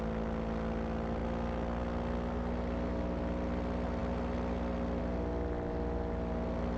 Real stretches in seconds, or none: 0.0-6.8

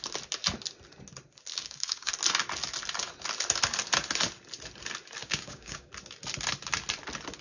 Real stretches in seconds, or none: 0.0-1.5; 2.1-5.2; 5.9-7.4

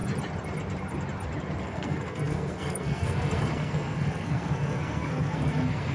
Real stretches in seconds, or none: 0.0-1.6

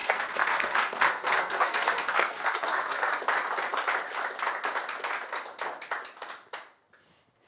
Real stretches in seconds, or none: 3.1-7.5